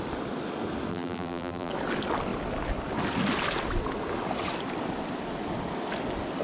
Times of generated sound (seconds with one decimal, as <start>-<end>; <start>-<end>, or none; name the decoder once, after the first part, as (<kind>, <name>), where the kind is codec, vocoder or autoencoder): 0.9-1.7 (vocoder, BigVGAN v2)